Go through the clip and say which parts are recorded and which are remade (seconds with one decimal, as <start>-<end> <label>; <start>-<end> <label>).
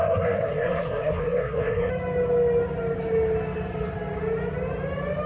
0.0-1.9 remade; 1.9-5.3 recorded